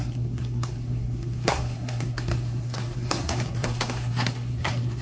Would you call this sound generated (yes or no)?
yes